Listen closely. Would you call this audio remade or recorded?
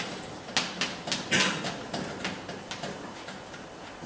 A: recorded